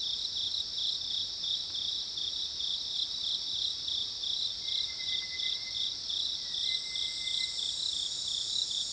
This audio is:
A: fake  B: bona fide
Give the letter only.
B